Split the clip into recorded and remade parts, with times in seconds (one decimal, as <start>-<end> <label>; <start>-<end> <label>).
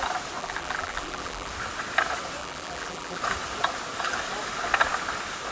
0.0-0.4 recorded; 0.4-1.5 remade; 1.5-2.4 recorded; 2.4-3.2 remade; 3.2-5.5 recorded